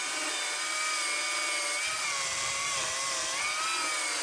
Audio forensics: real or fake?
real